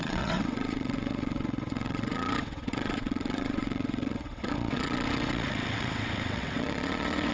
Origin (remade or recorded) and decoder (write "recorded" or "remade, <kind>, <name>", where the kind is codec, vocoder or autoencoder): remade, vocoder, WaveNeXt